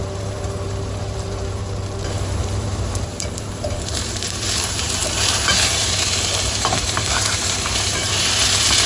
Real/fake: fake